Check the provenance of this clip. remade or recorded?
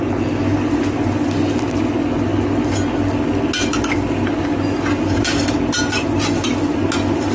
recorded